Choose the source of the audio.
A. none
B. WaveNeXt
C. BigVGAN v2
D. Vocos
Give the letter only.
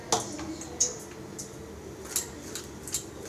A